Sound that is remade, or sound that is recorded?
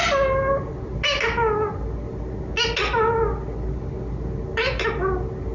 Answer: recorded